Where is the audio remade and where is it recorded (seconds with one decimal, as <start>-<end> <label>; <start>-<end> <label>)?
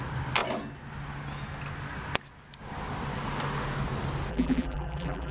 0.0-4.3 recorded; 4.3-5.3 remade